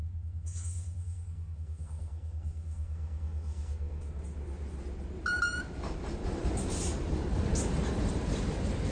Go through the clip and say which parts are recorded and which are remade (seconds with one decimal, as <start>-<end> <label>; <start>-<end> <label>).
0.0-4.2 remade; 4.2-8.9 recorded